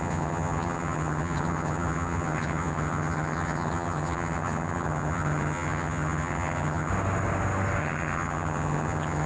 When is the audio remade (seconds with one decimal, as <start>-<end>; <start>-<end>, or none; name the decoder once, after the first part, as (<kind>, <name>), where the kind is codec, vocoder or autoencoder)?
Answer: 0.0-6.9 (vocoder, HiFi-GAN); 7.8-9.3